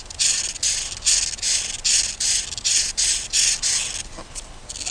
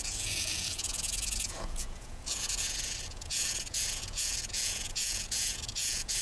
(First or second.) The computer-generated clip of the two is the second